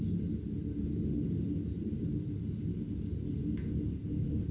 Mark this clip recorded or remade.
recorded